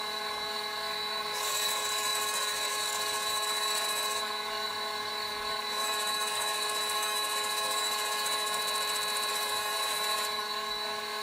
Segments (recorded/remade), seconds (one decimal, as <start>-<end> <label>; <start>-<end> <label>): 0.0-8.6 remade; 8.6-9.3 recorded; 9.3-11.2 remade